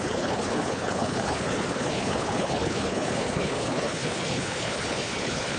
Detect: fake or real fake